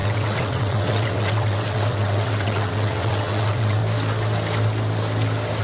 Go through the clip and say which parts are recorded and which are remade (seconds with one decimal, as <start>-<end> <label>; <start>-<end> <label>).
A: 0.0-3.8 remade; 3.8-5.6 recorded